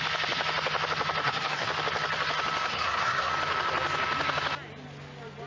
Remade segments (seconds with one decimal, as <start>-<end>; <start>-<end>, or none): 1.2-1.7; 2.7-3.3